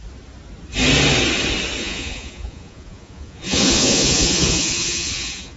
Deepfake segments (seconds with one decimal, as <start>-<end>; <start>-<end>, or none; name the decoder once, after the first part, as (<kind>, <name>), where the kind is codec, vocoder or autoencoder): 1.8-5.6 (vocoder, Vocos)